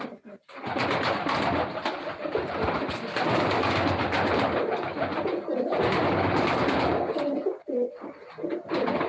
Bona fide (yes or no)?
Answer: yes